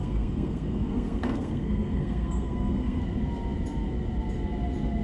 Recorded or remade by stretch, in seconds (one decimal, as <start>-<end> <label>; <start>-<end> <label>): 0.0-3.0 remade; 3.0-5.0 recorded